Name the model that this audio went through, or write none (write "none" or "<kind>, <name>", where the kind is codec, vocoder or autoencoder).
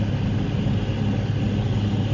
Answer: none